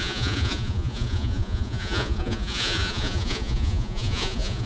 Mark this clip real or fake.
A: fake